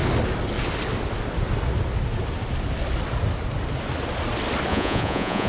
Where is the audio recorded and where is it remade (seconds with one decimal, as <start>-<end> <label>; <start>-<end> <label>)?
0.0-4.7 recorded; 4.7-5.5 remade